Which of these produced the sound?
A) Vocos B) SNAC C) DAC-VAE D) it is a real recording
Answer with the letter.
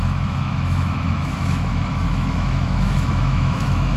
C